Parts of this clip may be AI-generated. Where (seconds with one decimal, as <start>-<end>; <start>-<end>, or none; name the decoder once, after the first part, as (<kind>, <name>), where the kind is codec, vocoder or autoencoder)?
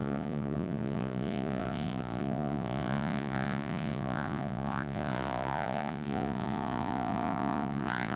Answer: 0.0-8.2 (vocoder, Vocos)